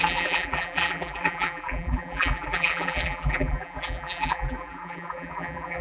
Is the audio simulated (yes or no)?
yes